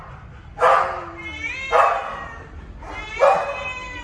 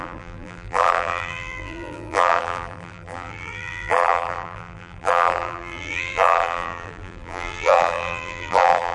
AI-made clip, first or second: second